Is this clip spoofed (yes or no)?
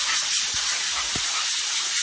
no